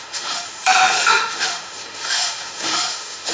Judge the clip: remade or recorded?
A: remade